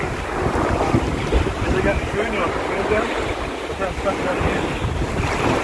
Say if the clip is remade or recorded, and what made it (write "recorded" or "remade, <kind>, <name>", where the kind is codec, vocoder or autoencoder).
recorded